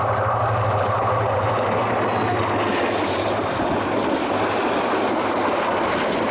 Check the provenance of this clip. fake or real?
real